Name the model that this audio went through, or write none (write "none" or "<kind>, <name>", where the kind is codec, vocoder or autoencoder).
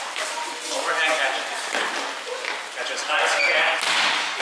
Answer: none